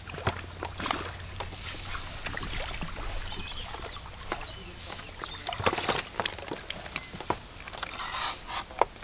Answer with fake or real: real